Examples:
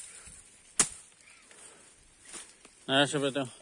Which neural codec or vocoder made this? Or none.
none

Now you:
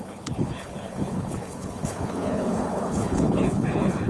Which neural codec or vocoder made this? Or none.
codec, HILCodec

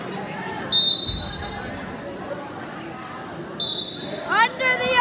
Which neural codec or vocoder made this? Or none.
none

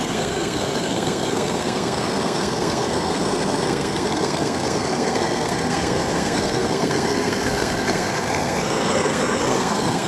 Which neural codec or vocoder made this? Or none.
codec, SNAC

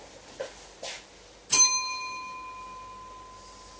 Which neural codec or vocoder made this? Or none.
none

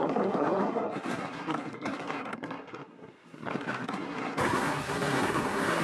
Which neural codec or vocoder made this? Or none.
codec, SNAC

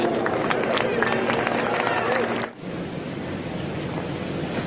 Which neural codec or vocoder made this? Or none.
none